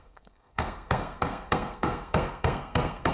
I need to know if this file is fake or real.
fake